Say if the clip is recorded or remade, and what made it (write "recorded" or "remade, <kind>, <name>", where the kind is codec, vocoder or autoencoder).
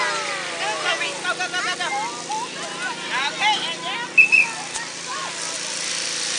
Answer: recorded